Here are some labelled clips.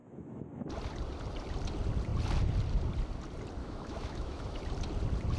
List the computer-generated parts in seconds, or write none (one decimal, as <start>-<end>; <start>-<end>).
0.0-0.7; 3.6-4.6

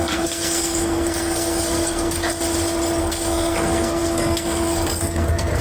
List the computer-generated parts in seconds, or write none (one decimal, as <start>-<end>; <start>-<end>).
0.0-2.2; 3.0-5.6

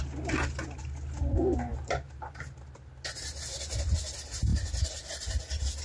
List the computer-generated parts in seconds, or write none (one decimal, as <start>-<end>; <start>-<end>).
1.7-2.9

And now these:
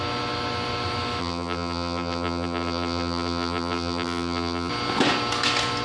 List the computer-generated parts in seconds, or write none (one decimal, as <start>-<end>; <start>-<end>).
1.2-4.7

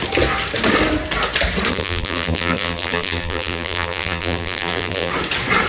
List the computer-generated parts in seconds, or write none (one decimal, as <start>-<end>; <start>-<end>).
1.7-5.1